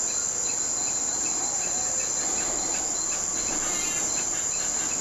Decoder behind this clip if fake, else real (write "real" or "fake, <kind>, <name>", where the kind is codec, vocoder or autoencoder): real